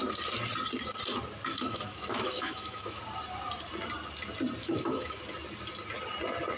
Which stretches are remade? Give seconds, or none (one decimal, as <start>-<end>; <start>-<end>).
1.5-3.0; 4.6-5.2